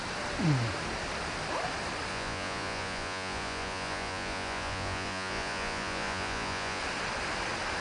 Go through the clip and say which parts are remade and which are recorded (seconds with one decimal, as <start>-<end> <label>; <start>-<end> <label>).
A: 0.0-2.1 recorded; 2.1-6.8 remade; 6.8-7.8 recorded